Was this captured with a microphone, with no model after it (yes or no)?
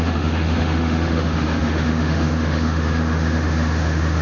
no